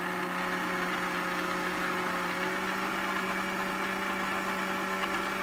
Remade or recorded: recorded